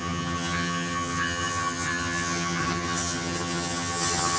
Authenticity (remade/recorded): remade